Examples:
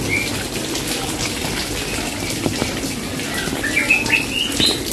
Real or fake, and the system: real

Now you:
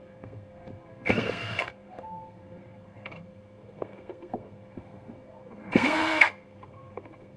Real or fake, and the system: fake, codec, SNAC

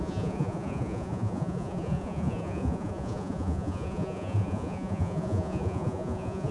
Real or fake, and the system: fake, vocoder, Vocos